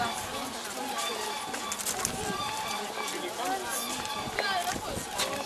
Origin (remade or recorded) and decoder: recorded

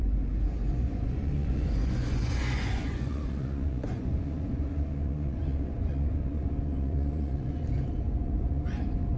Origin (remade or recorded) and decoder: remade, vocoder, Vocos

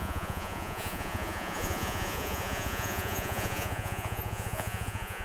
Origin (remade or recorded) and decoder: remade, vocoder, Vocos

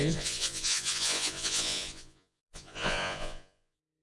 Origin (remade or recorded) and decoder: remade, vocoder, Vocos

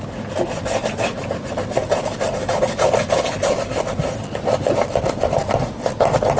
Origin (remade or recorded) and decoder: recorded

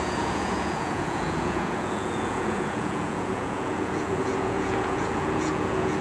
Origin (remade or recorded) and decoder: remade, vocoder, Vocos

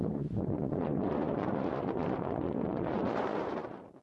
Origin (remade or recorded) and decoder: remade, vocoder, Vocos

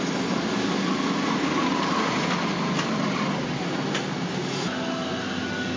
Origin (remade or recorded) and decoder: recorded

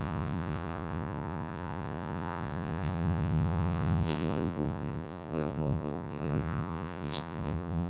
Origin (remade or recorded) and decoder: remade, vocoder, Vocos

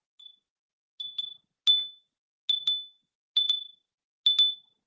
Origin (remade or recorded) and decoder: recorded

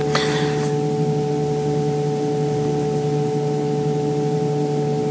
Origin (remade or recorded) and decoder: recorded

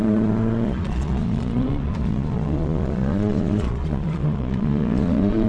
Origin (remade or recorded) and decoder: remade, vocoder, Vocos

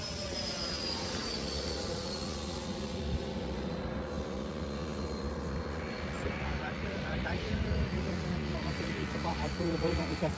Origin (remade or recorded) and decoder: remade, vocoder, Vocos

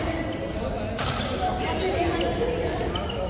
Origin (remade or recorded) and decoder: recorded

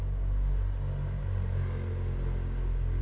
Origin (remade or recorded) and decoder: recorded